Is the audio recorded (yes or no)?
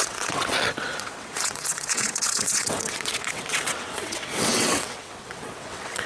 no